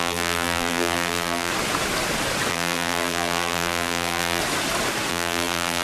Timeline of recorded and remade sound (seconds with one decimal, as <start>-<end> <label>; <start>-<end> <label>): 0.0-1.5 remade; 1.5-2.5 recorded; 2.5-4.4 remade; 4.4-5.1 recorded; 5.1-5.8 remade